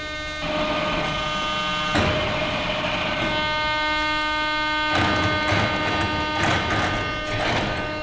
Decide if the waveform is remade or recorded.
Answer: recorded